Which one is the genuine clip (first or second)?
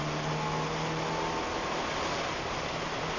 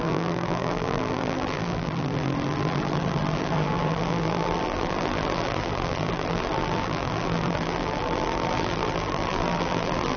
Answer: first